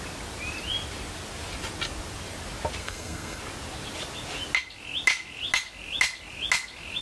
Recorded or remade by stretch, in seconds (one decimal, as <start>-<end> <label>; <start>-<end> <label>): 0.0-2.8 recorded; 2.8-3.4 remade; 3.4-7.0 recorded